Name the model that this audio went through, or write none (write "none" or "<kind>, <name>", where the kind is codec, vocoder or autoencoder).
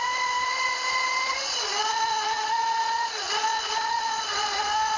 vocoder, Vocos